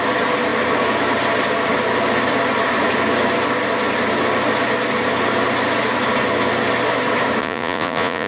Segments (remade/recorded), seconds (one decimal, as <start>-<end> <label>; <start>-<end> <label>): 0.0-7.4 recorded; 7.4-8.3 remade